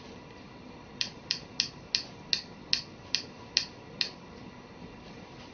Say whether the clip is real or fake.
real